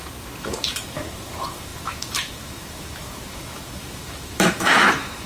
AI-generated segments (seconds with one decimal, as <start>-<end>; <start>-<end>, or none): 0.0-5.3